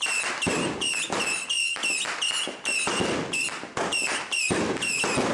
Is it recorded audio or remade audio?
recorded